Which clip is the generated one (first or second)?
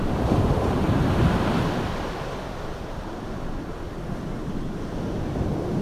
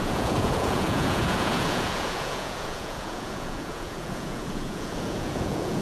second